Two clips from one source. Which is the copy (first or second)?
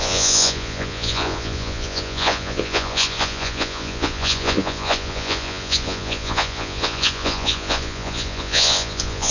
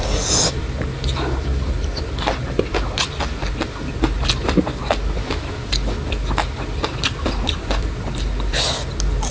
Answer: first